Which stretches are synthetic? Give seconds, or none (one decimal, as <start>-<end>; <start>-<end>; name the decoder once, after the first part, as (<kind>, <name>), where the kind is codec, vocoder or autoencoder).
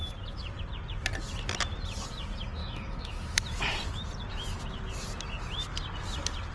2.6-3.4 (autoencoder, DAC-VAE)